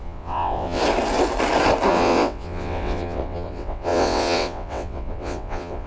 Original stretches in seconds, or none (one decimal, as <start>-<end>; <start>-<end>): 0.8-1.9